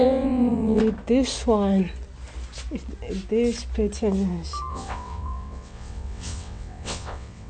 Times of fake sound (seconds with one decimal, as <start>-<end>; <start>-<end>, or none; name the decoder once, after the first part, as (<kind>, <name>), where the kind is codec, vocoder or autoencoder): 0.0-0.8 (vocoder, WaveNeXt); 4.7-7.5